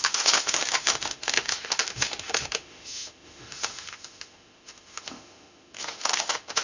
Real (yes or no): no